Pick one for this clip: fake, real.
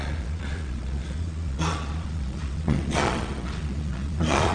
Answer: fake